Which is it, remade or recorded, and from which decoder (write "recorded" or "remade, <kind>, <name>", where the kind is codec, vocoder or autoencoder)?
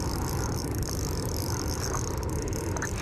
recorded